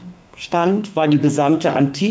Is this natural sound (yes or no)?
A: no